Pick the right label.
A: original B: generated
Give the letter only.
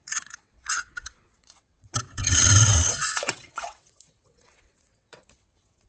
B